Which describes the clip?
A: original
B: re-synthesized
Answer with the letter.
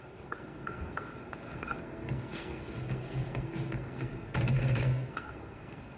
B